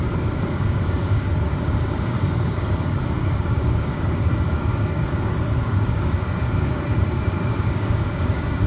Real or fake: fake